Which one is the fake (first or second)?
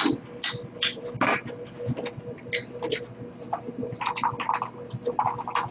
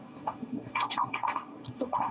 second